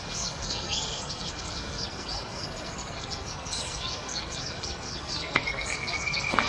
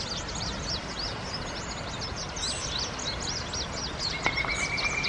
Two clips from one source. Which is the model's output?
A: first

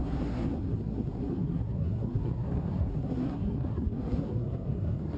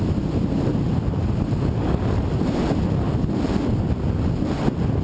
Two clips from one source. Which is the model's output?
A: first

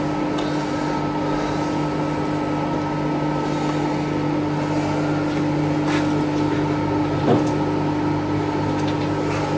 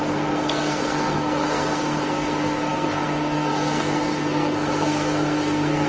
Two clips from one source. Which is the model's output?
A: second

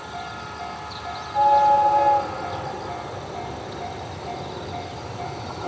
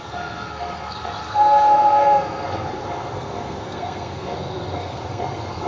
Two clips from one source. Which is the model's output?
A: second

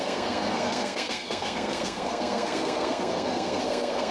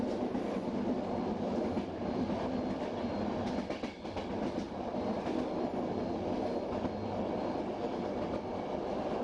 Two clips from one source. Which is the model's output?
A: first